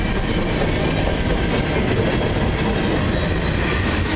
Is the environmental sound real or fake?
real